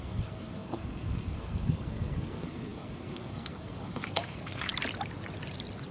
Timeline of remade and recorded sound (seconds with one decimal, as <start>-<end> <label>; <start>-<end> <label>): 0.0-4.7 remade; 4.7-5.9 recorded

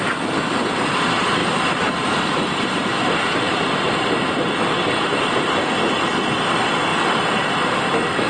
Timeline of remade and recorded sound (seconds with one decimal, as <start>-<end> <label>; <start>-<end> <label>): 0.0-1.4 recorded; 1.4-5.5 remade; 5.5-8.3 recorded

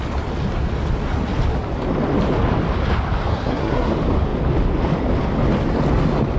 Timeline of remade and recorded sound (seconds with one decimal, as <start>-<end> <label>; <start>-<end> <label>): 0.0-3.3 recorded; 3.3-3.9 remade; 3.9-6.4 recorded

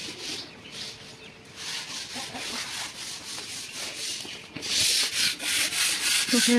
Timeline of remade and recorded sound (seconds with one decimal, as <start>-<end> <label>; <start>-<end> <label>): 0.0-6.6 recorded

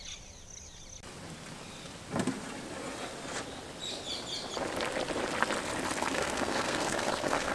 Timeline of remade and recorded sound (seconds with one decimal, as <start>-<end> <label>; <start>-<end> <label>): 0.0-6.0 recorded; 6.0-7.5 remade

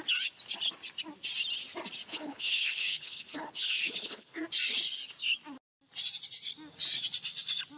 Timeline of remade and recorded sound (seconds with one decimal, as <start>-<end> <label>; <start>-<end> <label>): 0.0-2.1 recorded; 2.1-4.4 remade; 4.4-7.8 recorded

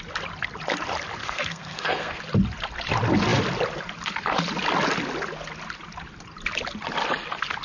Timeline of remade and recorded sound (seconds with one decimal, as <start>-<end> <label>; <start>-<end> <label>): 0.0-1.2 recorded; 1.2-2.2 remade; 2.2-7.6 recorded

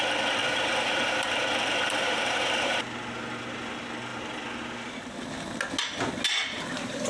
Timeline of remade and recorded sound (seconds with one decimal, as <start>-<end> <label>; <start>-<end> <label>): 0.0-0.4 recorded; 0.4-2.8 remade; 2.8-7.1 recorded